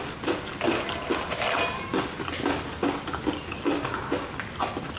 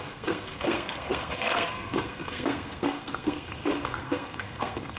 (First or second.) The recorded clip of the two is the first